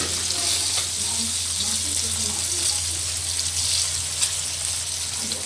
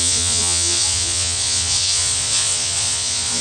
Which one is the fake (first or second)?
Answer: second